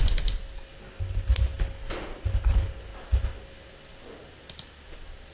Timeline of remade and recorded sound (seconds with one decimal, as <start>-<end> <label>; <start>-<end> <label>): 0.0-5.3 recorded